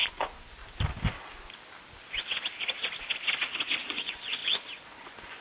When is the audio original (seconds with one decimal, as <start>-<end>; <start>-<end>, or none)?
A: 0.6-3.8